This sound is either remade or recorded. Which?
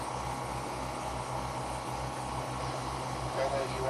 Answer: recorded